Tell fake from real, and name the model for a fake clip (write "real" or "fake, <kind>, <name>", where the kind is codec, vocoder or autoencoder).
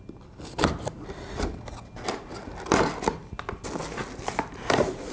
real